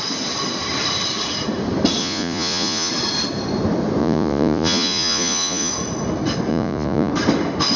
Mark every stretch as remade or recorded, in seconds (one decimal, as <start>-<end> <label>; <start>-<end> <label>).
0.0-2.0 recorded; 2.0-2.9 remade; 2.9-4.0 recorded; 4.0-5.7 remade; 5.7-6.5 recorded; 6.5-7.1 remade; 7.1-7.8 recorded